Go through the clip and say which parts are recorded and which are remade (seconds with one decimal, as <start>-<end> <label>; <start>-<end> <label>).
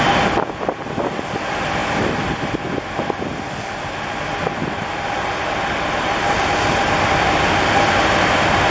0.0-8.7 recorded